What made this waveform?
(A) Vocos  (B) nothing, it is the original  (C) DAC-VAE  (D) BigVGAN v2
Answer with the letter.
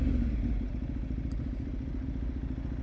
B